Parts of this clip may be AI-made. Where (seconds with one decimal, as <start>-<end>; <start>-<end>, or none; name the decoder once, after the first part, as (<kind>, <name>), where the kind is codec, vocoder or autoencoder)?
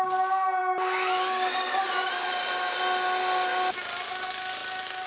none